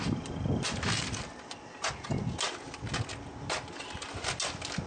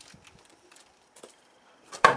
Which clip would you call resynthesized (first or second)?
second